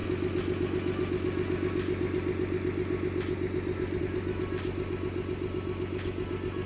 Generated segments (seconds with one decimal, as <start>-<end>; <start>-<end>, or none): none